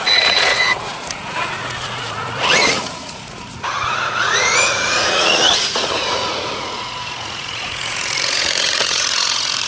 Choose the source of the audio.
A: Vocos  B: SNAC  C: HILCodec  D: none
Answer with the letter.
A